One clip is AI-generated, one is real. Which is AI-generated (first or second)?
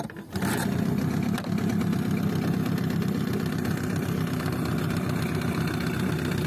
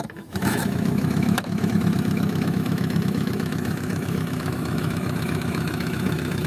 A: second